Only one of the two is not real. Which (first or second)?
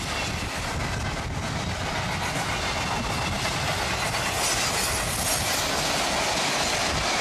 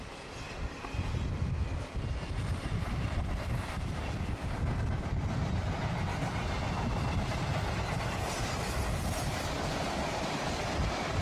second